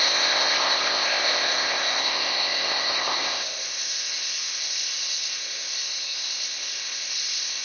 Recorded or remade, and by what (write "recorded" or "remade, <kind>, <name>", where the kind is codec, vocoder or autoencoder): remade, codec, ZipCodec